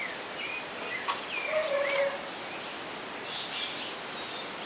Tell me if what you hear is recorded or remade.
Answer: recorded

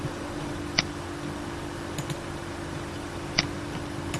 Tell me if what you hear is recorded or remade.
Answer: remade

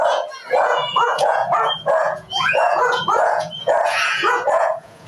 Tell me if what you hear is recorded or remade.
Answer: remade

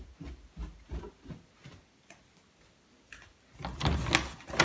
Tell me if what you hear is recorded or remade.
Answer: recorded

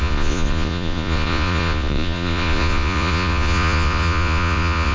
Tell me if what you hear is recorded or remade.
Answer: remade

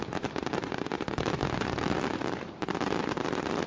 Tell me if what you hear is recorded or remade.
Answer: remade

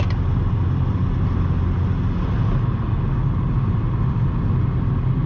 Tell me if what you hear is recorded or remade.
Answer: recorded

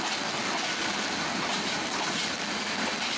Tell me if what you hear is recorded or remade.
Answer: recorded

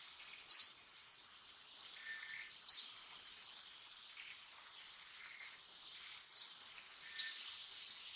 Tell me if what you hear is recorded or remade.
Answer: recorded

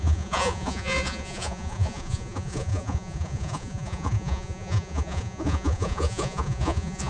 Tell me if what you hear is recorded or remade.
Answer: remade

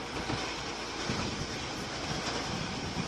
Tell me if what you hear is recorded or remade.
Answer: recorded